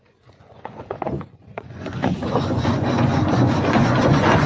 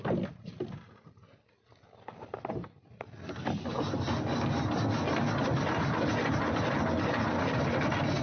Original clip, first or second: second